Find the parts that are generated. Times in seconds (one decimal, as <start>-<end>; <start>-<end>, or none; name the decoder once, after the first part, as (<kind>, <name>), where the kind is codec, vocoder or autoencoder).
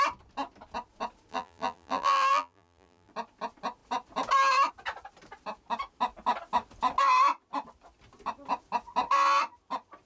1.3-3.1 (vocoder, BigVGAN v2)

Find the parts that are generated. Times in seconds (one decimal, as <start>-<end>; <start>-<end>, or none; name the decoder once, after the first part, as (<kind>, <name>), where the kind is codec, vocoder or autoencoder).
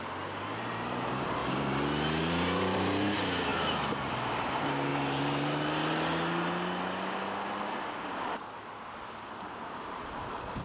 0.0-1.4 (vocoder, BigVGAN v2); 2.2-3.5; 4.1-4.9; 9.3-10.6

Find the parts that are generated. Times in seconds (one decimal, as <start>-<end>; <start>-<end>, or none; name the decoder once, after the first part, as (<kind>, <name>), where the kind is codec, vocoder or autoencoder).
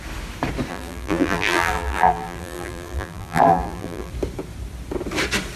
0.7-4.1 (vocoder, BigVGAN v2)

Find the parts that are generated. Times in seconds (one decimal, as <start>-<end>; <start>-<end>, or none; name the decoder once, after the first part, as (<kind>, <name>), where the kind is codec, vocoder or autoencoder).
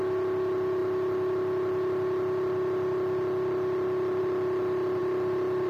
none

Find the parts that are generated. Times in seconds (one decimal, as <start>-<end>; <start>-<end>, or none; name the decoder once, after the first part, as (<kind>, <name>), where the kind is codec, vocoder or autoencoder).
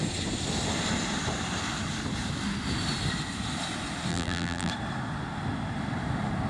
4.1-4.7 (vocoder, BigVGAN v2)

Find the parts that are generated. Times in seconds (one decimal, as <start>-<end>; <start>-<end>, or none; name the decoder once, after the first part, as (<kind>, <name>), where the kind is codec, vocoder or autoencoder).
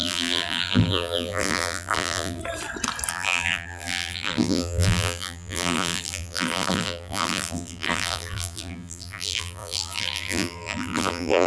0.0-2.4 (vocoder, BigVGAN v2); 3.1-11.5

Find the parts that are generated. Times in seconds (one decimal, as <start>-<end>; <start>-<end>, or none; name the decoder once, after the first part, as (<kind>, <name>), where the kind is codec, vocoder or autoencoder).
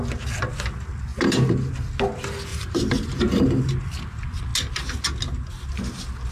1.1-1.8 (vocoder, BigVGAN v2); 2.5-3.7